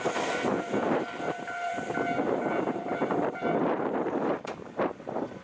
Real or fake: fake